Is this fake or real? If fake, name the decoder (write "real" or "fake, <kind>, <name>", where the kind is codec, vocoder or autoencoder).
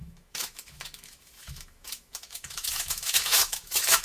fake, autoencoder, DAC-VAE